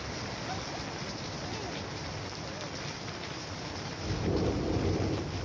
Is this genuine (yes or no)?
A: yes